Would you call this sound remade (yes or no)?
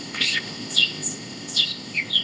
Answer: yes